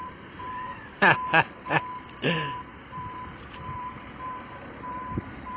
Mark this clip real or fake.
fake